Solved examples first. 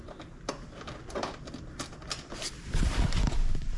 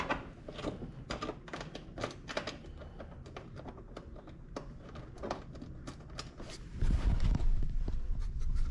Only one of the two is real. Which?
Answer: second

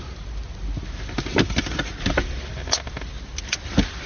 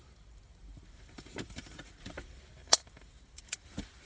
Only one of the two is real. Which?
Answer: first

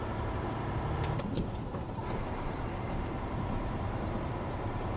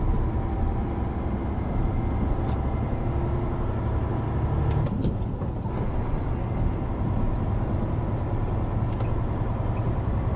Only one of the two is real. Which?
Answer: second